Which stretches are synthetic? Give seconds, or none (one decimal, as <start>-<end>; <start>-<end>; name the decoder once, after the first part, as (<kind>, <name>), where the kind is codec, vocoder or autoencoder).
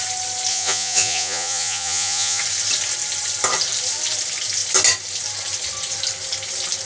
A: 0.5-2.4 (vocoder, Vocos)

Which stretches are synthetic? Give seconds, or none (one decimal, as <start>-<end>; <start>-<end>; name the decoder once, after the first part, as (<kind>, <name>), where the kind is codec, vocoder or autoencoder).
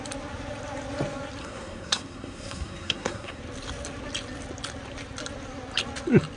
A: 1.4-3.4 (codec, SNAC)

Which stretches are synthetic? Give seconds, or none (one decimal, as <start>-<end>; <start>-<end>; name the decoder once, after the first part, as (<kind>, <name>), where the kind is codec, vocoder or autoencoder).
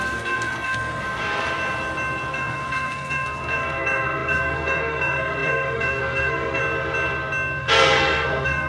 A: 0.0-1.2 (codec, SNAC); 2.3-6.6; 7.6-8.7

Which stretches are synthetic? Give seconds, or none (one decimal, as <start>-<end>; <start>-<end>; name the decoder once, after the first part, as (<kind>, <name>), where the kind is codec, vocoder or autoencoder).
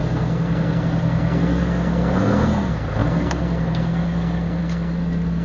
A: 0.0-5.4 (codec, SNAC)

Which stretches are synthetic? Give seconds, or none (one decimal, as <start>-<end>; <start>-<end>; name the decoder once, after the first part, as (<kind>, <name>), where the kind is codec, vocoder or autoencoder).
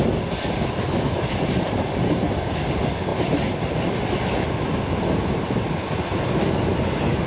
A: none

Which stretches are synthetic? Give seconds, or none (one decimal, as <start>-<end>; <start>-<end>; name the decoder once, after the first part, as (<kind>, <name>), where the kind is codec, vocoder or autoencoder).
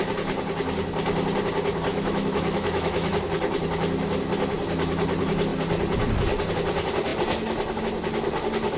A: 1.9-3.2 (autoencoder, DAC-VAE)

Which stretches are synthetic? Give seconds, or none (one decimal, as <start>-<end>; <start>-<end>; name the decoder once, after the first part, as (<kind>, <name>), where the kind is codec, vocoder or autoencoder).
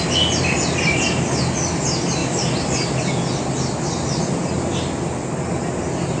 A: none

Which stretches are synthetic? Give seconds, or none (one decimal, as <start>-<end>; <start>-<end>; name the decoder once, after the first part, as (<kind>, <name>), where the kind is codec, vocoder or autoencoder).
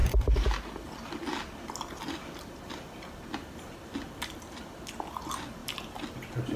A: 0.0-0.6 (vocoder, BigVGAN v2)